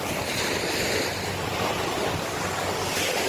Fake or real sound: real